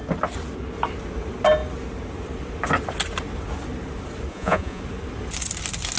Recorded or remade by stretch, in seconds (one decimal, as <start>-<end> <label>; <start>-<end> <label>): 0.0-4.3 recorded; 4.3-4.8 remade; 4.8-6.0 recorded